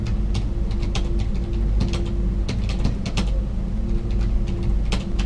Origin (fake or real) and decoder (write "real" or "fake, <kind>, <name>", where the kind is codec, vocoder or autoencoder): real